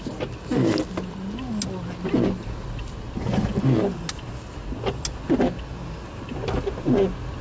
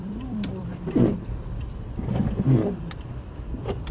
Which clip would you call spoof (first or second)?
second